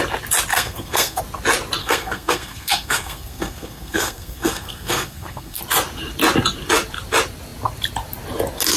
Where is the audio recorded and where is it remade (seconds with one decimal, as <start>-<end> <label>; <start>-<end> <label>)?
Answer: 0.0-0.5 recorded; 0.5-1.2 remade; 1.2-1.8 recorded; 1.8-5.6 remade; 5.6-8.8 recorded